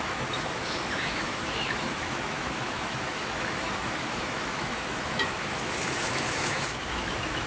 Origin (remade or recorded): remade